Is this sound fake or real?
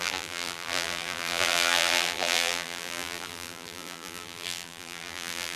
fake